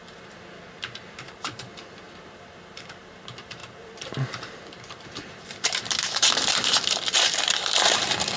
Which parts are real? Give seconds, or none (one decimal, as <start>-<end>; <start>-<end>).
none